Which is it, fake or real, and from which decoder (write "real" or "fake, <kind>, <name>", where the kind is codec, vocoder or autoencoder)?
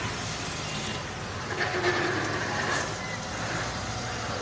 real